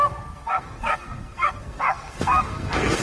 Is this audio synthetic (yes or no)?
yes